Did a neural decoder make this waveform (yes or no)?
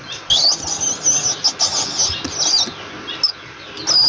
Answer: no